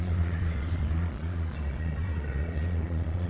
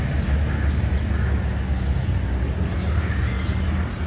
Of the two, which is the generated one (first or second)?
first